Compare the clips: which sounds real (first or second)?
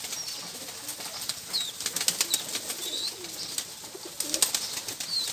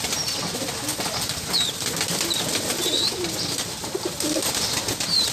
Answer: first